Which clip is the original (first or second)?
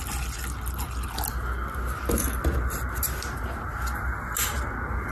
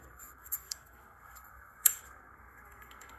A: first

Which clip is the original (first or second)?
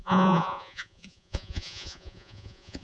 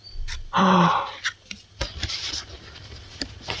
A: second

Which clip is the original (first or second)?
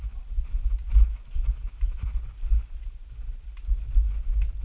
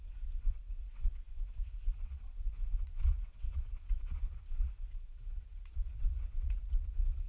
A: first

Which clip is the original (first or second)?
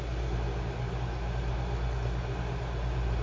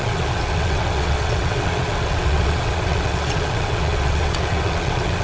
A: first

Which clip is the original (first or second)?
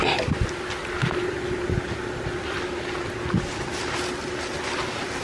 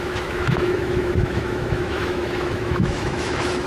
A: first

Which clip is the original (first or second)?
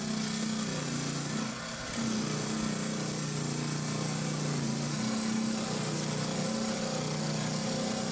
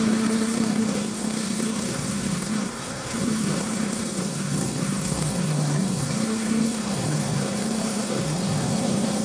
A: first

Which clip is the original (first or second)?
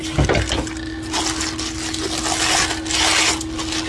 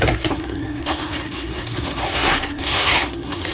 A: first